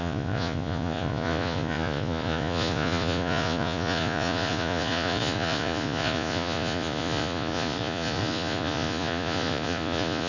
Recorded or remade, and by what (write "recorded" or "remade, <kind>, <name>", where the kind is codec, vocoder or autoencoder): remade, vocoder, Vocos